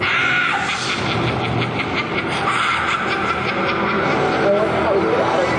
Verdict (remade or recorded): recorded